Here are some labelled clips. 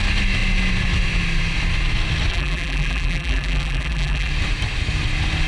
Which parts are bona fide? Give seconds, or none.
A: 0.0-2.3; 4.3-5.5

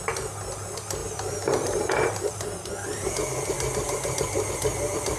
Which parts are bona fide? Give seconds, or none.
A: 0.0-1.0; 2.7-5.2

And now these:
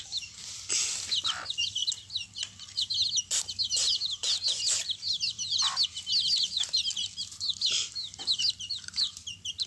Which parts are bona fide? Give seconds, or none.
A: 0.0-9.7

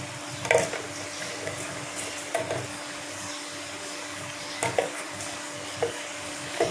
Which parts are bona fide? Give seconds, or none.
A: 0.0-1.2; 2.0-2.7

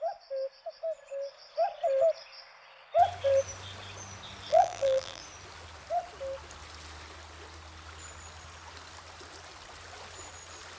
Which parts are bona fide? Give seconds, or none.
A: 0.0-4.5; 5.2-10.8